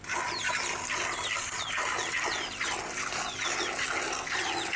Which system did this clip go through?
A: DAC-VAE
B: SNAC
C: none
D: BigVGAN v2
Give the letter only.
C